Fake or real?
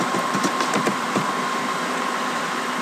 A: fake